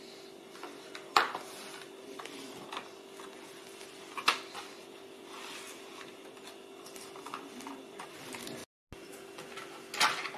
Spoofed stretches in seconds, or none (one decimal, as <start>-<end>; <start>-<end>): none